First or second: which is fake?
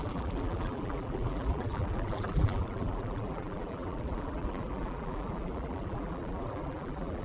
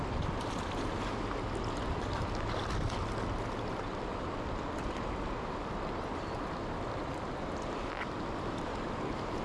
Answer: first